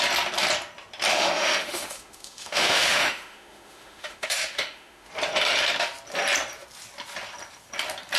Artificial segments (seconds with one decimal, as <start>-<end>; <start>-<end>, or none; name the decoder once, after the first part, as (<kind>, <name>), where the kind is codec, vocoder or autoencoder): 1.1-5.1 (autoencoder, DAC-VAE)